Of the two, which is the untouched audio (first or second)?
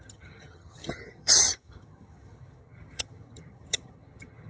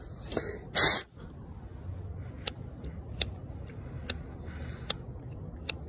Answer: second